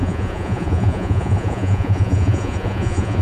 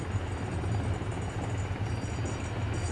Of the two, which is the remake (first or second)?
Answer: first